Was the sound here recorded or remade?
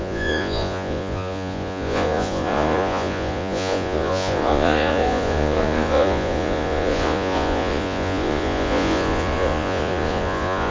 remade